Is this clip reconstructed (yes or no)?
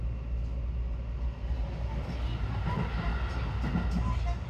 no